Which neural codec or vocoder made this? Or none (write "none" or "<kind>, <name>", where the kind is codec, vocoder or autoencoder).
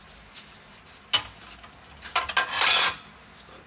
none